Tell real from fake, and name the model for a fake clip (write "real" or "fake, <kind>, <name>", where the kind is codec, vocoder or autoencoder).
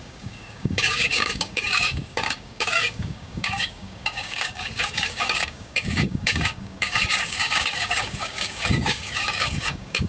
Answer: fake, codec, DAC